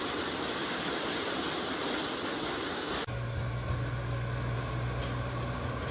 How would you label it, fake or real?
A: real